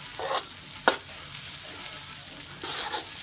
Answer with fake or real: real